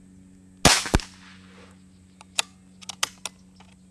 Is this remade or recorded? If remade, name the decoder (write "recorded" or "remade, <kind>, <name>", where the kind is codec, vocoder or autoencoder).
recorded